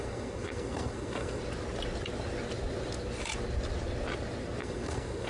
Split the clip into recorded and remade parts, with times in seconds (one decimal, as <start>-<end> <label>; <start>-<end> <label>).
0.0-1.4 remade; 1.4-4.6 recorded; 4.6-5.3 remade